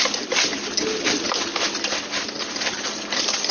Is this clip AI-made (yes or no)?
no